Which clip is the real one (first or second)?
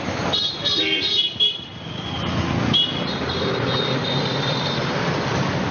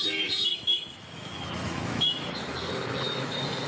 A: first